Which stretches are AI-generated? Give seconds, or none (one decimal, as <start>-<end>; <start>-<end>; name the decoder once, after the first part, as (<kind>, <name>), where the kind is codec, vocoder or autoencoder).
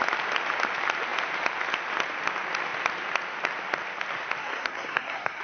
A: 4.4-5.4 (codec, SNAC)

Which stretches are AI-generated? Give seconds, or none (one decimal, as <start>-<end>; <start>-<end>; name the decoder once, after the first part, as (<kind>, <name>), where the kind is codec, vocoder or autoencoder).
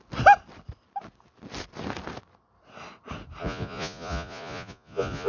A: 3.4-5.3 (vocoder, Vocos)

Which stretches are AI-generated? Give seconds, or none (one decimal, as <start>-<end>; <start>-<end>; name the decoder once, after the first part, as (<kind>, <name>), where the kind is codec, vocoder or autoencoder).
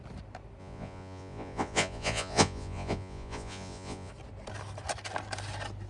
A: 0.6-4.1 (vocoder, Vocos)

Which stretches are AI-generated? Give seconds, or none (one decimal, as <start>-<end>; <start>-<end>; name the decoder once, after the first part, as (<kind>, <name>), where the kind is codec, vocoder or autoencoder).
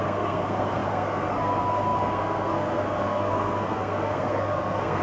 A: 0.0-5.0 (codec, SNAC)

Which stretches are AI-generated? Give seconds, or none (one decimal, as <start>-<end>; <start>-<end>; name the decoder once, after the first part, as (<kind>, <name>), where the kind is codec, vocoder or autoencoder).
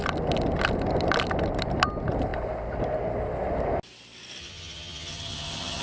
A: 4.4-5.8 (vocoder, HiFi-GAN)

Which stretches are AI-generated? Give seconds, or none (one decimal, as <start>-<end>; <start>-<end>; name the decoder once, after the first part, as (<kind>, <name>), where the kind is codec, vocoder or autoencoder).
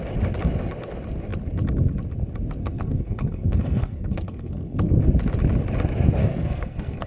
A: 2.6-5.0 (codec, SNAC); 6.2-7.1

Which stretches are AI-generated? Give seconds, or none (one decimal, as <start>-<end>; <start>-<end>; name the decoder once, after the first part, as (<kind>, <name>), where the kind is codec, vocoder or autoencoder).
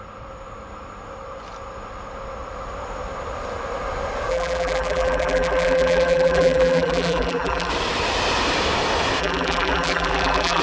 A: 4.3-7.7 (vocoder, BigVGAN v2); 9.2-10.6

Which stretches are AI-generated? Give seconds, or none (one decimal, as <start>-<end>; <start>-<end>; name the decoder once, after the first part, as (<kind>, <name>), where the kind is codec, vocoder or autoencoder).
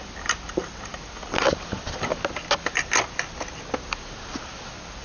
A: none